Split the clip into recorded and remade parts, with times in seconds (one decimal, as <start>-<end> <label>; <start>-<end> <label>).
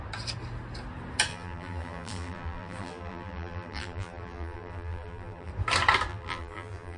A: 0.0-1.3 recorded; 1.3-5.5 remade; 5.5-6.1 recorded; 6.1-7.0 remade